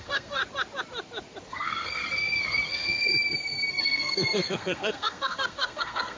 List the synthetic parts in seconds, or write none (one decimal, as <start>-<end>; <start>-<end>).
0.0-0.4; 1.5-2.0; 2.7-3.1; 3.7-6.2